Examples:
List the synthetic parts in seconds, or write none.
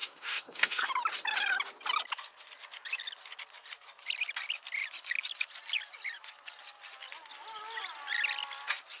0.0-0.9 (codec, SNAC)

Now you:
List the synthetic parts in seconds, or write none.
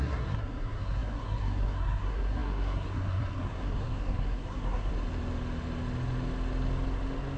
0.0-4.9 (codec, SNAC)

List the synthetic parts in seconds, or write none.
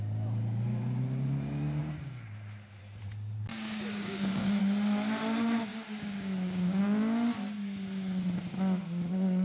3.5-4.6 (codec, DAC); 5.7-6.8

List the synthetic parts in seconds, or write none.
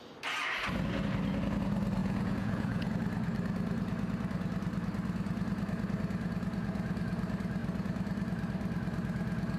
2.0-2.9 (vocoder, Vocos)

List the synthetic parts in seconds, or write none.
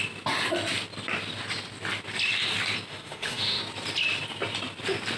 2.9-3.6 (autoencoder, DAC-VAE)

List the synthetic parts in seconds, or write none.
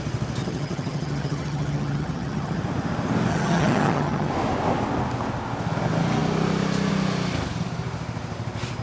0.4-2.6 (vocoder, HiFi-GAN); 3.3-4.3